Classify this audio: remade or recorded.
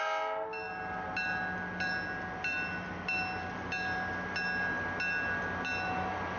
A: recorded